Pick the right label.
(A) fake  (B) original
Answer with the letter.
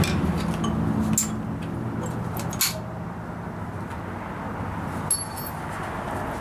B